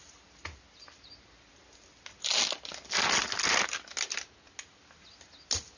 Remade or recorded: recorded